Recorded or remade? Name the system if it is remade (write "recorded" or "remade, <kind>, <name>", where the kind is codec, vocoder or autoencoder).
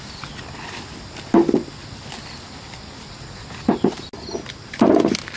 recorded